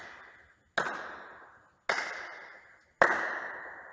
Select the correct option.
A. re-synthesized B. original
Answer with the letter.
B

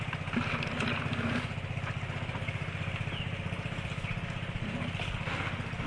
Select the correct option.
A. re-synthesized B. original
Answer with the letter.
B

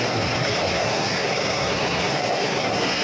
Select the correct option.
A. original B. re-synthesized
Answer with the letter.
B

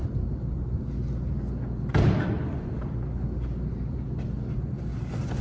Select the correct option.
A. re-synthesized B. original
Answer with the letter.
B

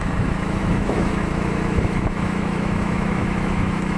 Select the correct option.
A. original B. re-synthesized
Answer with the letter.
B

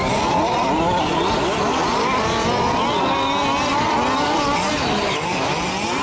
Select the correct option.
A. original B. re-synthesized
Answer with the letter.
A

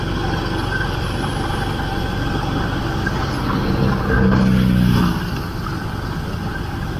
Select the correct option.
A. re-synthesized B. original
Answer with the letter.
B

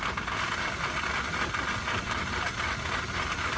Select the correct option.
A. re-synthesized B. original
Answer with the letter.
B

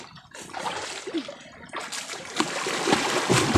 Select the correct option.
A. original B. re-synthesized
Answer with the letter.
A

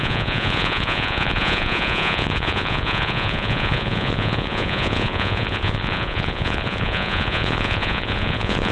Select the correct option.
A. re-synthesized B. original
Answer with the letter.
A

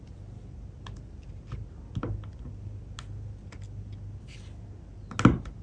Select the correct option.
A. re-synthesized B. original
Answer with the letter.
B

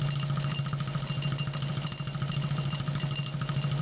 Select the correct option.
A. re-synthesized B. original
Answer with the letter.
B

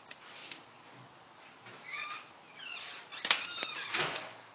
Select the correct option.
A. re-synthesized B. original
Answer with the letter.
B